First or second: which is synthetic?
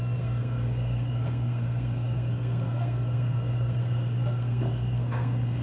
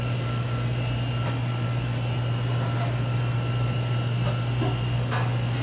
first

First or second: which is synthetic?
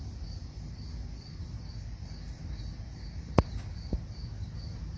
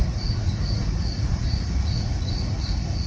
second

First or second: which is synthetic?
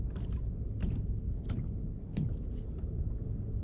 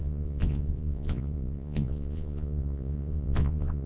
second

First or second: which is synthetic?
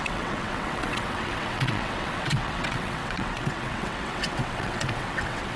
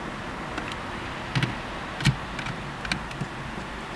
first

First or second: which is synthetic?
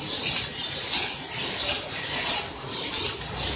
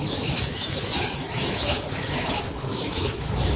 second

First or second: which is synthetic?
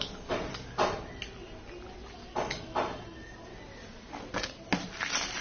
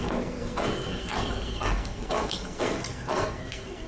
second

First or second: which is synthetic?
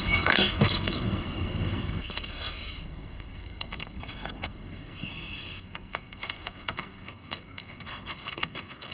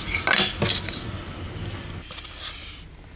first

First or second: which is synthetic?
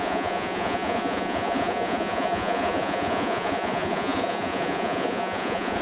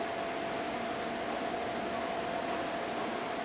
first